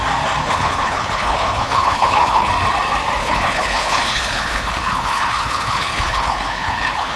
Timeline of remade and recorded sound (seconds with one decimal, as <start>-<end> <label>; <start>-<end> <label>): 0.0-0.4 recorded; 0.4-2.5 remade; 2.5-3.2 recorded; 3.2-7.2 remade